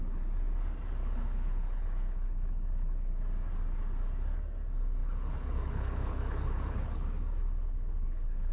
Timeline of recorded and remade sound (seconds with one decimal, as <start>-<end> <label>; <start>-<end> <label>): 0.0-1.0 recorded; 1.0-3.1 remade; 3.1-5.0 recorded; 5.0-8.5 remade